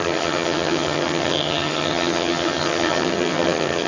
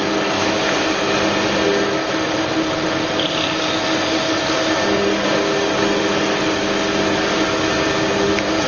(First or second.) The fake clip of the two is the first